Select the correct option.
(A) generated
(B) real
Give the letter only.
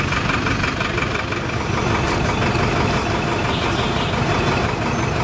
B